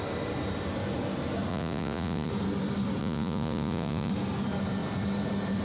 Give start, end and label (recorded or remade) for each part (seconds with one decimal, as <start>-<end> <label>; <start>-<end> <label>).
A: 0.0-1.5 recorded; 1.5-2.3 remade; 2.3-3.0 recorded; 3.0-4.1 remade; 4.1-5.6 recorded

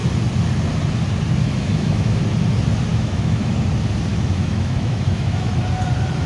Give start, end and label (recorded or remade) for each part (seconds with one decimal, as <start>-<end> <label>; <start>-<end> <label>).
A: 0.0-1.4 recorded; 1.4-2.2 remade; 2.2-2.9 recorded; 2.9-3.5 remade; 3.5-4.1 recorded; 4.1-5.5 remade; 5.5-6.3 recorded

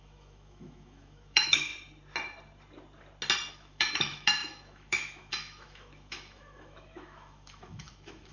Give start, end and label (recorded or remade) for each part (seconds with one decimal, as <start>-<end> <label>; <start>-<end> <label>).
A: 0.0-1.7 remade; 1.7-3.5 recorded; 3.5-8.3 remade

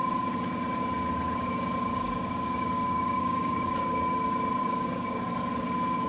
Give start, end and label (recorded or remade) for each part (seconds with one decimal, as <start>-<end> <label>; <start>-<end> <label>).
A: 0.0-1.9 recorded; 1.9-3.9 remade; 3.9-4.6 recorded; 4.6-5.3 remade; 5.3-6.1 recorded